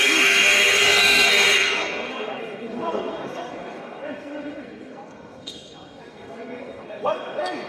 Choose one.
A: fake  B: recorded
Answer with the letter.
A